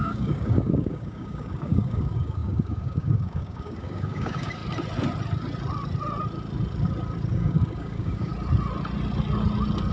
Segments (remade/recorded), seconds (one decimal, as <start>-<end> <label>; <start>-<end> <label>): 0.0-4.6 remade; 4.6-7.3 recorded; 7.3-8.3 remade; 8.3-9.9 recorded